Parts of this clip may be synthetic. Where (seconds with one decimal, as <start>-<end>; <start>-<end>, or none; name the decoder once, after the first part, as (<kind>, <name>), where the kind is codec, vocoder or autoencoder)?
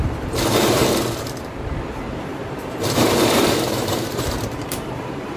0.0-0.8 (vocoder, BigVGAN v2); 1.4-5.4